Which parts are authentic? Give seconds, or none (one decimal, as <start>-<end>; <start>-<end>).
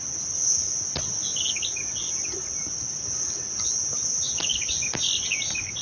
0.0-5.8